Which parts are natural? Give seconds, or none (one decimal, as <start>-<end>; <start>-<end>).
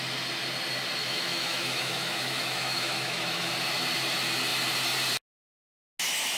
0.0-1.0; 3.5-6.4